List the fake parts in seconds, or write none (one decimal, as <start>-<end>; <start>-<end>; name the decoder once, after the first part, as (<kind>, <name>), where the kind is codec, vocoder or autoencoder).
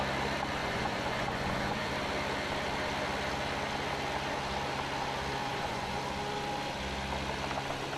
0.6-1.9 (vocoder, Vocos); 5.4-6.0